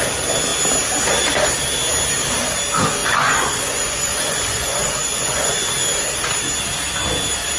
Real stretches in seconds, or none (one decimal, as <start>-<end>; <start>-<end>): 0.0-3.0; 5.7-7.6